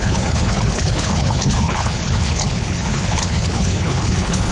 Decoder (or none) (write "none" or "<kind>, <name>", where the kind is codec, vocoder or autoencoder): codec, HILCodec